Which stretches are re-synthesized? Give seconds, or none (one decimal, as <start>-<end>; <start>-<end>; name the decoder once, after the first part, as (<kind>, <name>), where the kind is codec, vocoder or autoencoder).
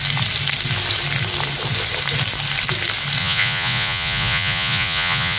3.2-5.4 (vocoder, Vocos)